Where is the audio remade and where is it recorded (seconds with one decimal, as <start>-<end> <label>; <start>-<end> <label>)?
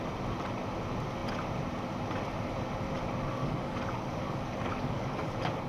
0.0-3.4 recorded; 3.4-5.3 remade; 5.3-5.7 recorded